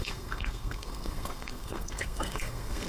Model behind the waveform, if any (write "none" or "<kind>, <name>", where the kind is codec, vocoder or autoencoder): codec, SNAC